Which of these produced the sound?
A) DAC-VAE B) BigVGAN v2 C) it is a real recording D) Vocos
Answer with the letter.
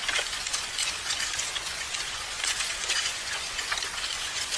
D